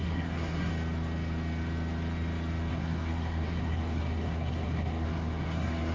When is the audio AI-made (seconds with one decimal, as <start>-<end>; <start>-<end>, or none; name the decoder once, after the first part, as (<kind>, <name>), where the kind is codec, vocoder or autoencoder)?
0.0-0.7 (codec, SNAC); 2.7-5.9